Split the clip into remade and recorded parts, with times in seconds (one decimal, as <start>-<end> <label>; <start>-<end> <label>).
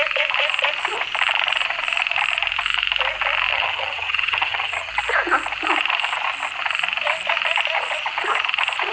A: 0.0-3.5 recorded; 3.5-4.9 remade; 4.9-8.9 recorded